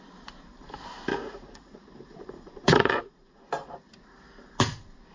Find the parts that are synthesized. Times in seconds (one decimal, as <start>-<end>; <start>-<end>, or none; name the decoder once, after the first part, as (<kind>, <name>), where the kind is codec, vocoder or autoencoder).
1.1-3.4 (vocoder, Vocos)